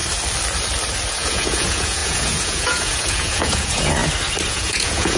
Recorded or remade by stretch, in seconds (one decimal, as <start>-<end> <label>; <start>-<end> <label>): 0.0-1.1 recorded; 1.1-4.0 remade; 4.0-4.5 recorded; 4.5-5.2 remade